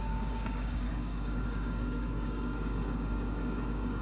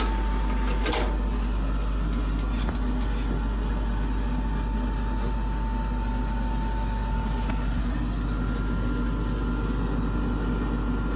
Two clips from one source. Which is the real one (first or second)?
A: second